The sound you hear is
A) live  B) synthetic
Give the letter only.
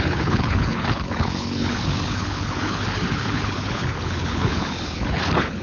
B